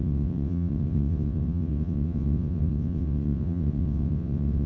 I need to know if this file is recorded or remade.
remade